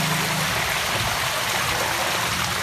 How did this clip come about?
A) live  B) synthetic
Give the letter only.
A